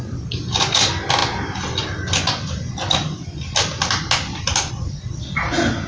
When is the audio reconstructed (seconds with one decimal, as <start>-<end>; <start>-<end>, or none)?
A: none